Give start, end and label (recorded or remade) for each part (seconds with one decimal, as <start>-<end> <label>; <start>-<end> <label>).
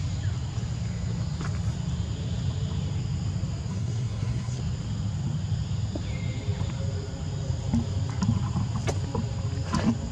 0.0-3.7 recorded; 3.7-4.6 remade; 4.6-10.1 recorded